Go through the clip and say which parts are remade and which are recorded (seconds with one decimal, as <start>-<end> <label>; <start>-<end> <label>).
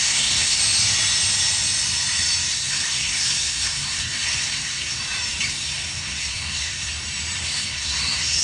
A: 0.0-0.6 remade; 0.6-2.5 recorded; 2.5-5.0 remade; 5.0-5.5 recorded; 5.5-6.9 remade; 6.9-7.4 recorded; 7.4-8.4 remade